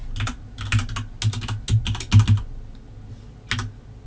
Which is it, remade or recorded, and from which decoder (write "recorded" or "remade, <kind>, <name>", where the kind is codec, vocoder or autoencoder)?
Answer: recorded